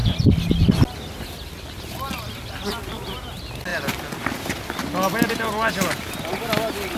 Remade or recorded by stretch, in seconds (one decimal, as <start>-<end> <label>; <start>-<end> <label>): 0.0-7.0 recorded